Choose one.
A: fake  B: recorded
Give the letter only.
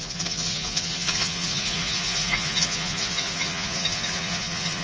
A